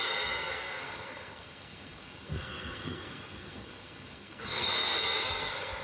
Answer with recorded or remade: remade